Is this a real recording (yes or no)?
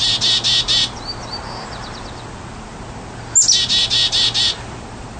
yes